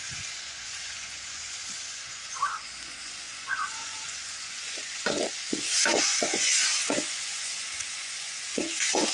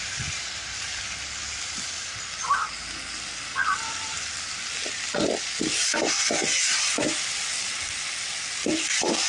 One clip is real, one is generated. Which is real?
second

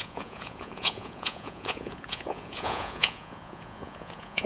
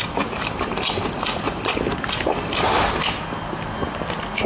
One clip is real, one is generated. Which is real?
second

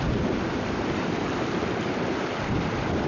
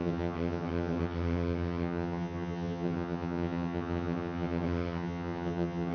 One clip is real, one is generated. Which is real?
first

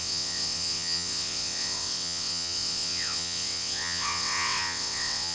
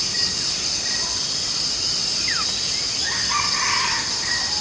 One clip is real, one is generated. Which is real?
second